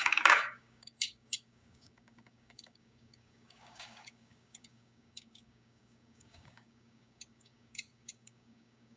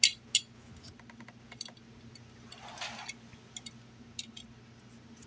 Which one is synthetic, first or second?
first